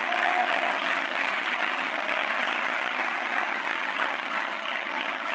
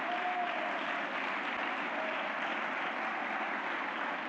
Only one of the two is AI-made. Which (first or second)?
first